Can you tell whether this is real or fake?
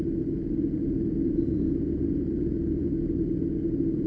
real